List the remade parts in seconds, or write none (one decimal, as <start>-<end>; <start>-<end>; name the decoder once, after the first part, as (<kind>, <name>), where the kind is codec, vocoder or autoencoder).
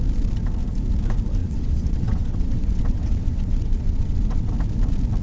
1.4-4.5 (vocoder, WaveNeXt)